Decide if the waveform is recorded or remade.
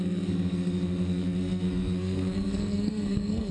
remade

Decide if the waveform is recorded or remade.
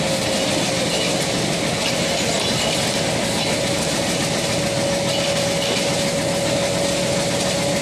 recorded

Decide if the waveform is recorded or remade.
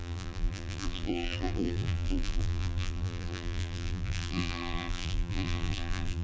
remade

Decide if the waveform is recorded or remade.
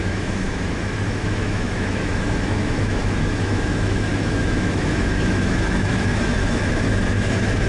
remade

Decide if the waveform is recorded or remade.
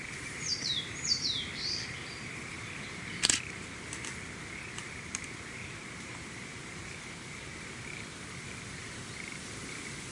remade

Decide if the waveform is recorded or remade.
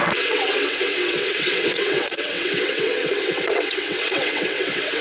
remade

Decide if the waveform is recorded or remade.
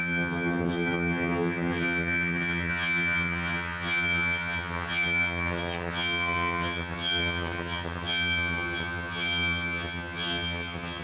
remade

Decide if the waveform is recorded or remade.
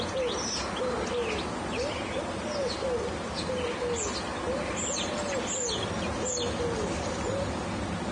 recorded